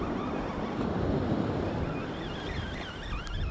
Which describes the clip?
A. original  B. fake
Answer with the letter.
A